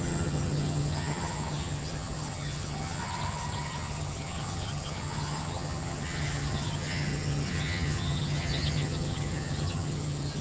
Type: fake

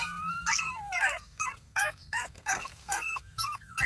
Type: fake